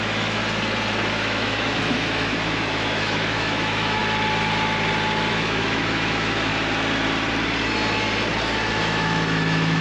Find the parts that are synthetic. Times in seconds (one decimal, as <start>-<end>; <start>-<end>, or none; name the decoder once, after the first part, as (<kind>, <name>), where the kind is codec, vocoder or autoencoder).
0.0-0.4 (autoencoder, DAC-VAE); 1.1-4.0; 5.3-6.5; 8.7-9.8

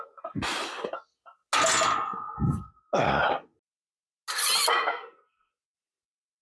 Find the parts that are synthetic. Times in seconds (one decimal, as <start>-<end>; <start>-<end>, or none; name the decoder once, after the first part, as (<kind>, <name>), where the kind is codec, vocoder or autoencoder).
4.9-5.5 (codec, SNAC)